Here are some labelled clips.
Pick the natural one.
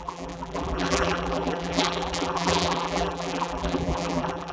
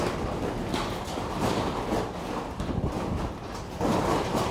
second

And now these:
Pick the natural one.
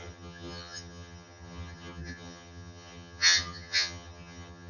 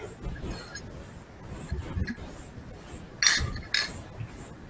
second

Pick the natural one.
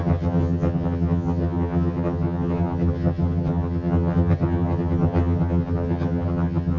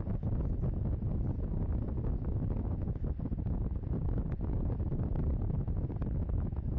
second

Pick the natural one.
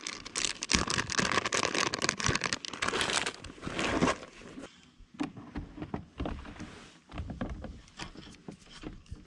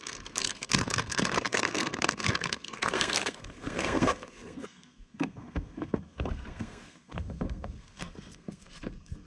first